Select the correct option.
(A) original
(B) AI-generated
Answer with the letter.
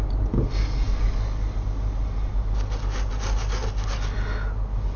A